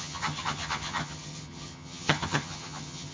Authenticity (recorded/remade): remade